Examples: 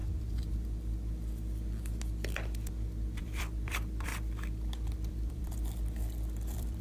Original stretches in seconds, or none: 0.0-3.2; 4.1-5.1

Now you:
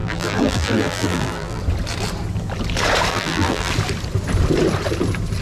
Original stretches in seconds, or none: 1.6-3.1; 3.7-5.4

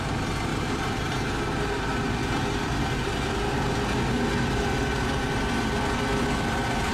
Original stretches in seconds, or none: 0.0-0.5; 1.1-6.9

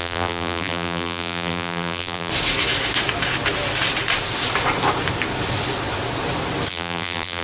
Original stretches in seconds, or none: 2.3-6.7

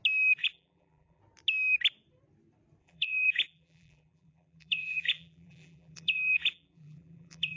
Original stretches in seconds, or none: 0.0-0.4; 1.2-2.8

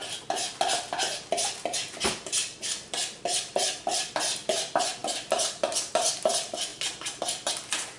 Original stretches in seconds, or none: 0.0-2.4; 4.1-8.0